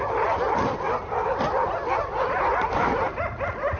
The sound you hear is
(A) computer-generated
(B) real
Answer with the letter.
B